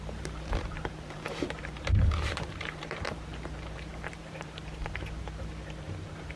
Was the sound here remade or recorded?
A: remade